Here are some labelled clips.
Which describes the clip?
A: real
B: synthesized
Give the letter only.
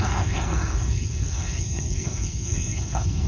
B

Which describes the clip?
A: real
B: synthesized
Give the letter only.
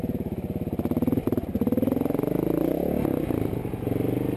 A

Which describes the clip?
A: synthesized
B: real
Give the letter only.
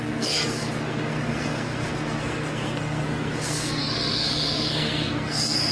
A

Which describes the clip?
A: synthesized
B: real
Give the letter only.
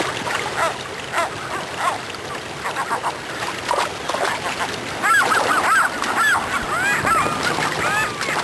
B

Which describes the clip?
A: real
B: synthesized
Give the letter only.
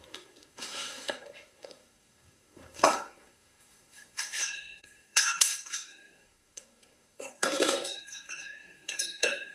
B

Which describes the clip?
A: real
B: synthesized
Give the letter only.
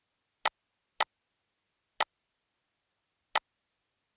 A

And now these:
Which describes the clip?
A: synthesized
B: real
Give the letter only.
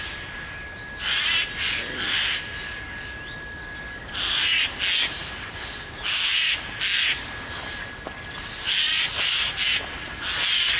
B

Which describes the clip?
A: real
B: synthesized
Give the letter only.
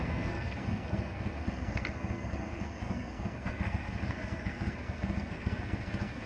B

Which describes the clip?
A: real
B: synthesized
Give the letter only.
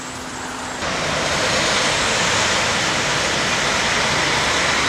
A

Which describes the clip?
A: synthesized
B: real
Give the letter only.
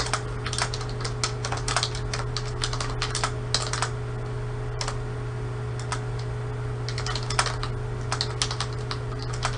B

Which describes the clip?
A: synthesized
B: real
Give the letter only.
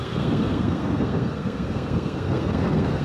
A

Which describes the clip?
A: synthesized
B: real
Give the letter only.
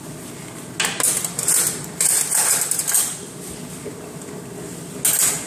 B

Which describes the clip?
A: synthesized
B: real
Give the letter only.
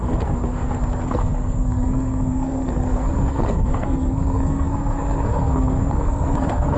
A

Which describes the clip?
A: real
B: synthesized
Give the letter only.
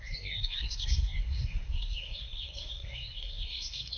B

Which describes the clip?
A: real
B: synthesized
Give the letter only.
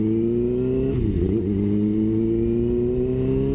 A